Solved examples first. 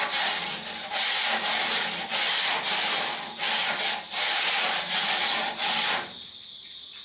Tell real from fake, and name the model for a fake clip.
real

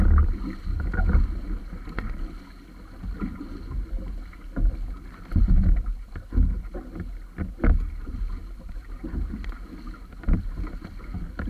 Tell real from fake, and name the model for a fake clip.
real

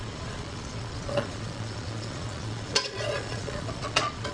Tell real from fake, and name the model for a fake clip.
fake, vocoder, Vocos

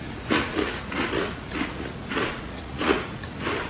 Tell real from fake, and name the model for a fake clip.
fake, vocoder, Vocos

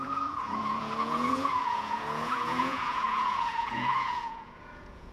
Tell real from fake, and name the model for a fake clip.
fake, vocoder, Vocos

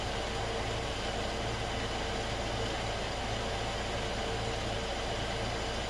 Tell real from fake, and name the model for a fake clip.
real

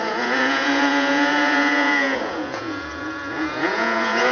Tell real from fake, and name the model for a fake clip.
fake, vocoder, Vocos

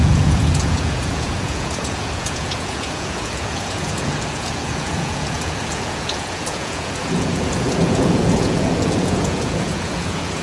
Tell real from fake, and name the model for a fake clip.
fake, vocoder, Vocos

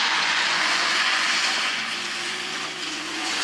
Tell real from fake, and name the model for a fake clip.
fake, vocoder, Vocos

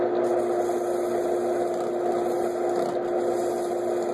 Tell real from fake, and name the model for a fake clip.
real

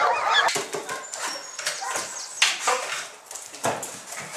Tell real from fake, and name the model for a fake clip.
real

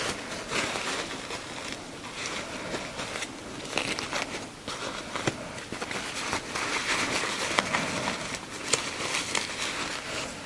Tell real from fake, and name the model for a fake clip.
real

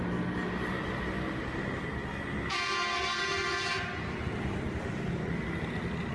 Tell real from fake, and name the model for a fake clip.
real